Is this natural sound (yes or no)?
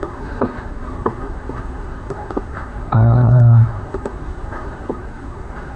no